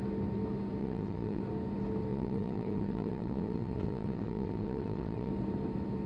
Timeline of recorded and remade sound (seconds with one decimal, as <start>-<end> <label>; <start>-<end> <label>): 0.0-0.8 recorded; 0.8-1.4 remade; 1.4-2.1 recorded; 2.1-5.3 remade; 5.3-6.1 recorded